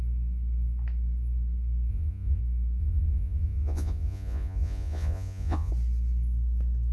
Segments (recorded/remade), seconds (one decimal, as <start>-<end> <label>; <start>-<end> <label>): 0.0-1.9 recorded; 1.9-2.4 remade; 2.4-2.8 recorded; 2.8-5.7 remade; 5.7-6.9 recorded